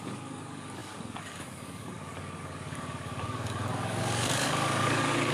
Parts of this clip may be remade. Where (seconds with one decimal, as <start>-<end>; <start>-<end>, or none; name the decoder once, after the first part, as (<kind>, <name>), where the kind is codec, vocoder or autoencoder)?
0.0-5.3 (codec, DAC)